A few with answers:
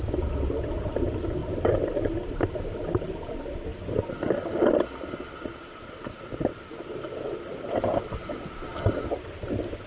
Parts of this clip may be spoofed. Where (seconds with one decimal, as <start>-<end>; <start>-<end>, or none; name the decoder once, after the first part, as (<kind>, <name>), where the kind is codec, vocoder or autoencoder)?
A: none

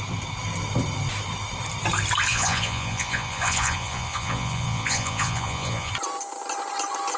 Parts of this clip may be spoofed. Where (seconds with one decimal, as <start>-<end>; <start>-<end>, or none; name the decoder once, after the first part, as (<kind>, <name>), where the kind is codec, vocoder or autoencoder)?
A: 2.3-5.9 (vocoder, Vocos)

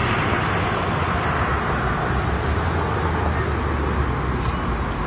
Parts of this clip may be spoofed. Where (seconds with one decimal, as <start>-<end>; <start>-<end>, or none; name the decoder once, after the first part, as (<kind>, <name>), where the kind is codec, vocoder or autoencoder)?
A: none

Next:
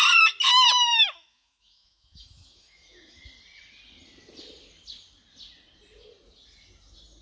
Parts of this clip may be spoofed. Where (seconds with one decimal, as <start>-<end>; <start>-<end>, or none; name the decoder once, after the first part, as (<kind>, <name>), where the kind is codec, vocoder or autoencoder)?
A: 0.9-3.2 (autoencoder, DAC-VAE)

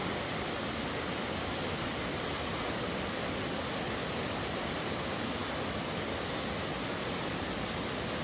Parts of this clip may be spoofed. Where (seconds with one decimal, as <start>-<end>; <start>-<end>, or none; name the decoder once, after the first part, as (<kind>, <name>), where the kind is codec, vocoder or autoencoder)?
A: none

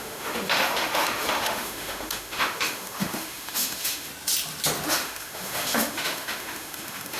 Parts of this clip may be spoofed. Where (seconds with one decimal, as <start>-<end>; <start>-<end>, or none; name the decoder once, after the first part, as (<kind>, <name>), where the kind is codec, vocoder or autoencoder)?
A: 0.0-4.1 (autoencoder, DAC-VAE); 4.9-7.2

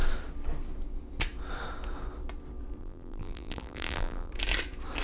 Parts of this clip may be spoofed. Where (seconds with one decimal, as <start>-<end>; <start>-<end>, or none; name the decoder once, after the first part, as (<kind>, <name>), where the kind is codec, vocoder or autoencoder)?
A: 2.8-4.3 (vocoder, BigVGAN v2)